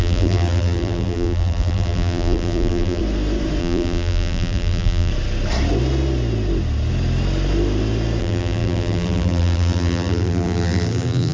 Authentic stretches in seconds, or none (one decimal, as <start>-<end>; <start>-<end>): 3.0-3.6; 5.1-8.2